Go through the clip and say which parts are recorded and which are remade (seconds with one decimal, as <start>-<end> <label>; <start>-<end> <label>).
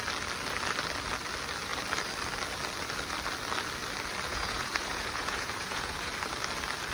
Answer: 0.0-4.3 recorded; 4.3-6.1 remade; 6.1-6.9 recorded